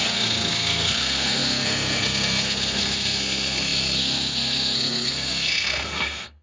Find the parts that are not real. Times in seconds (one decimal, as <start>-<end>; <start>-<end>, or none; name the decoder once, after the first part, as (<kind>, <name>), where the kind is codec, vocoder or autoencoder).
0.0-6.4 (codec, SNAC)